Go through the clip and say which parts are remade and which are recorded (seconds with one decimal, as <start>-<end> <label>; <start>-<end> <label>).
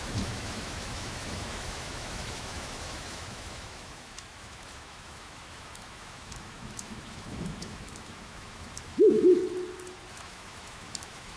0.0-9.4 remade; 9.4-10.1 recorded; 10.1-11.4 remade